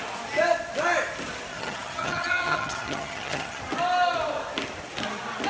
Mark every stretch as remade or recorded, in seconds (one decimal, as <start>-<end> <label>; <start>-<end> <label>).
0.0-1.5 recorded; 1.5-3.6 remade; 3.6-5.5 recorded